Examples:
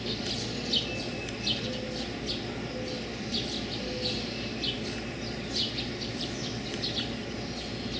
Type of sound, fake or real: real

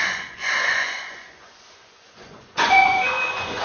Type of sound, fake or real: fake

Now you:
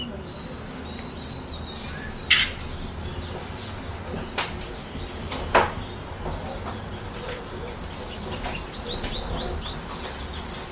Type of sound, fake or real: real